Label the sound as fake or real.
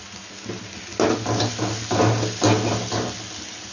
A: real